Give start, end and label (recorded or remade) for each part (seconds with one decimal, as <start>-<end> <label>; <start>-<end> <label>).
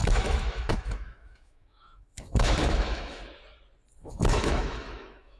0.0-3.2 remade; 3.2-4.0 recorded; 4.0-5.4 remade